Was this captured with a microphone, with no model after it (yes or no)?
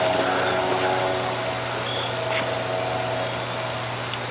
yes